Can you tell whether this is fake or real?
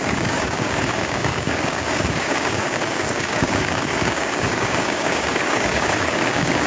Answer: fake